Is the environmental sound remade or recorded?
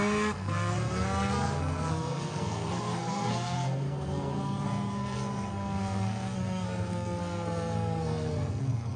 remade